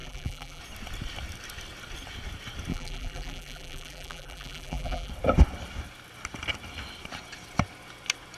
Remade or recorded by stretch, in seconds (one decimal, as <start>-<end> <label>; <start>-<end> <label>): 0.0-0.6 remade; 0.6-2.7 recorded; 2.7-5.1 remade; 5.1-8.4 recorded